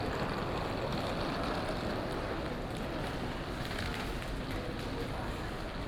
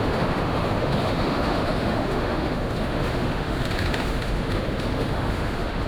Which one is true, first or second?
first